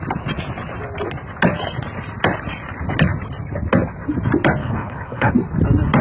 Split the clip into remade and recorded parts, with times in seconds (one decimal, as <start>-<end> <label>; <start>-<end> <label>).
0.0-4.6 recorded; 4.6-5.3 remade; 5.3-6.0 recorded